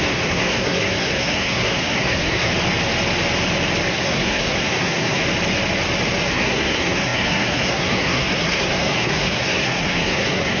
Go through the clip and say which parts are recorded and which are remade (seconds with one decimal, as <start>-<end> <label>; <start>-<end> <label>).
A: 0.0-2.5 remade; 2.5-3.9 recorded; 3.9-5.2 remade; 5.2-6.3 recorded; 6.3-10.6 remade